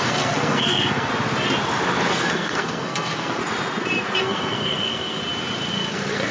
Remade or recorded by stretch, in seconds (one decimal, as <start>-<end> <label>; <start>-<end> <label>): 0.0-1.1 remade; 1.1-2.1 recorded; 2.1-3.4 remade; 3.4-4.2 recorded; 4.2-5.2 remade; 5.2-5.7 recorded; 5.7-6.3 remade